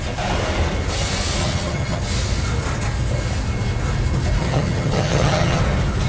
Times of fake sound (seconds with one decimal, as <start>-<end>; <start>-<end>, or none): 1.4-2.0; 4.4-5.6